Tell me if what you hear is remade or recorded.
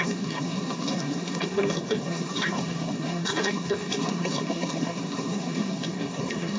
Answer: remade